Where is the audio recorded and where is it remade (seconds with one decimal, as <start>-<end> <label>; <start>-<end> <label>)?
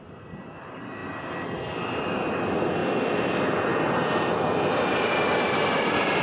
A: 0.0-6.2 recorded